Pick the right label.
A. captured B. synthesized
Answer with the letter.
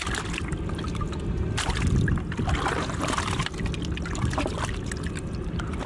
A